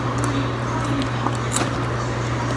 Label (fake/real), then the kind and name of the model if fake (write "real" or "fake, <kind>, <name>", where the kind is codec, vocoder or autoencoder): real